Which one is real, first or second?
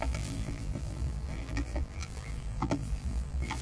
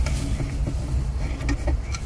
second